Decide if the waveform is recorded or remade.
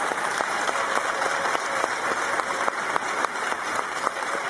remade